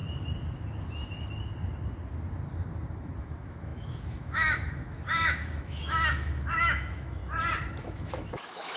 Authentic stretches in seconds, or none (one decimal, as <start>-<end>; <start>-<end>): 0.0-3.2; 7.2-7.8